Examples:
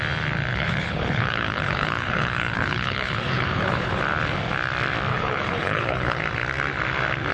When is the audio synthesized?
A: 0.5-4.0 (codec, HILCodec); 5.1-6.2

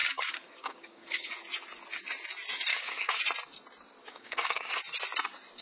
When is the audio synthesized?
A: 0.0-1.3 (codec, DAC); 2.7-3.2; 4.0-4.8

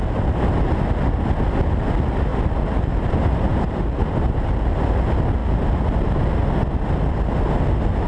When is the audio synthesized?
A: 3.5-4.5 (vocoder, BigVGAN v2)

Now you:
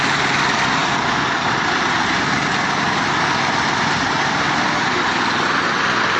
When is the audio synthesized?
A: none

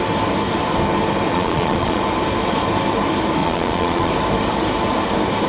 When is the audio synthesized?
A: 1.3-2.0 (vocoder, Vocos); 3.4-4.1